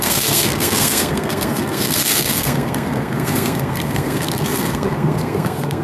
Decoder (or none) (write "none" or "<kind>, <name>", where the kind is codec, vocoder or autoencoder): codec, SNAC